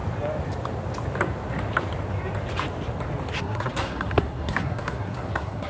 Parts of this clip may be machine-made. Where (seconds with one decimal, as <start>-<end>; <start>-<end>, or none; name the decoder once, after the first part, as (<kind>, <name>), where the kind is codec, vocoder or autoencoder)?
3.4-5.7 (codec, SNAC)